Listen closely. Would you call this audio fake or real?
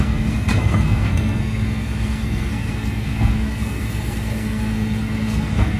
fake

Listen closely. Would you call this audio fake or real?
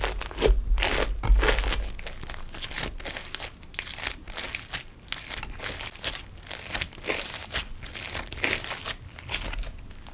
real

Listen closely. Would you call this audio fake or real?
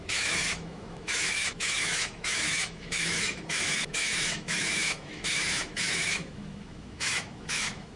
fake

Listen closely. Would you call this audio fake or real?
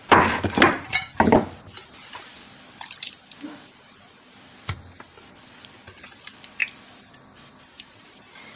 real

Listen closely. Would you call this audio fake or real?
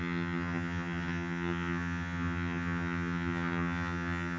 fake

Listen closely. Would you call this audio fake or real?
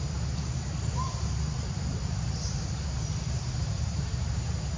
fake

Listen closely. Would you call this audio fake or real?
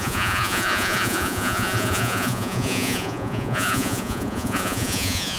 fake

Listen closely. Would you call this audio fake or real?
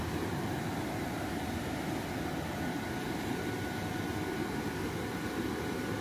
real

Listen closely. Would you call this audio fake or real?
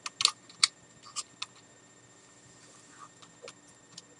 real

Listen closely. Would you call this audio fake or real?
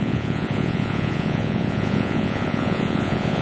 fake